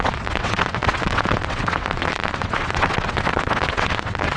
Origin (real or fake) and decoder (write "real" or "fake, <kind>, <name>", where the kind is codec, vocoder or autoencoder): fake, vocoder, WaveNeXt